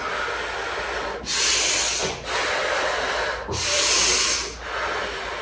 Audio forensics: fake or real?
real